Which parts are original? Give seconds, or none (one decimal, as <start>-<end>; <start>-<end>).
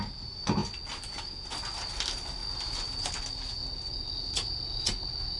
0.0-5.4